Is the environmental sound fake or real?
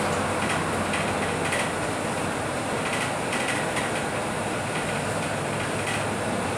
real